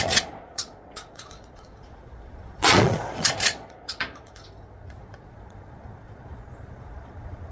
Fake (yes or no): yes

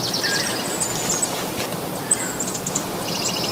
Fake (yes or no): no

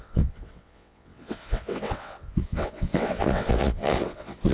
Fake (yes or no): yes